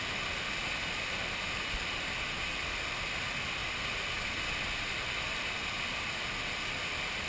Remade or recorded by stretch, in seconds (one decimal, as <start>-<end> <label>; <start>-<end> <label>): 0.0-7.3 recorded